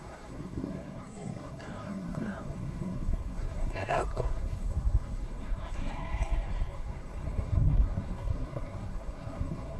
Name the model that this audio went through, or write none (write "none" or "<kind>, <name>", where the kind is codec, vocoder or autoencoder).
codec, SNAC